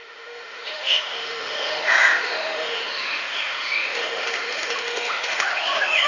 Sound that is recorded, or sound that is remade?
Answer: remade